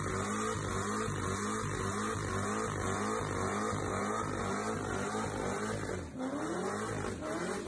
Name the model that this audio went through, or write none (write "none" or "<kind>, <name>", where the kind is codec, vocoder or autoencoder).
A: none